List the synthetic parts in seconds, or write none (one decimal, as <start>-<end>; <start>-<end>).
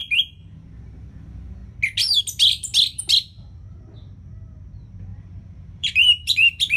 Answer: 0.0-1.1; 5.1-6.8